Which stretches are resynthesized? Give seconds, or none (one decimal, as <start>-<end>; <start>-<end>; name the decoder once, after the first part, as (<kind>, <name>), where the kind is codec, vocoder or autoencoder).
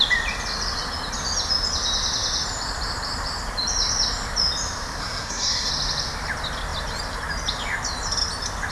5.0-5.7 (codec, SNAC)